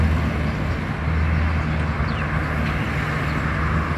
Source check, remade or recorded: recorded